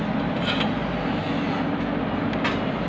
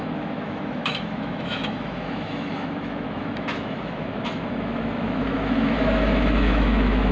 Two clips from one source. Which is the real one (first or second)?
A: first